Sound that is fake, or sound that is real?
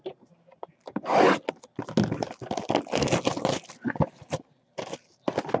real